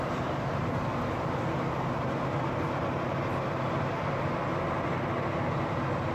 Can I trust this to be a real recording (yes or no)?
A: yes